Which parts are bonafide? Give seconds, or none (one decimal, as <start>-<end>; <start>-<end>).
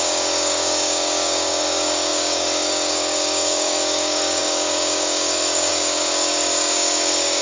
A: none